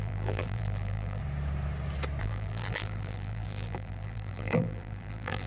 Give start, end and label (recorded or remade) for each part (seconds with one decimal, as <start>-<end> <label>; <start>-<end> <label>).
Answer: 0.0-1.2 remade; 1.2-2.2 recorded; 2.2-5.5 remade